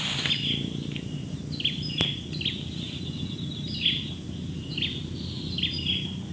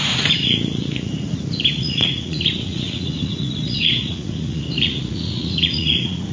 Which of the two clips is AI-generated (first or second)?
second